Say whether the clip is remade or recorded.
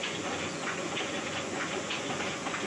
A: remade